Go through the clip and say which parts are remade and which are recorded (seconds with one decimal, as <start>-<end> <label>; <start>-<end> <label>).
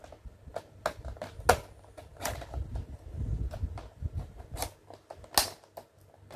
0.0-6.4 recorded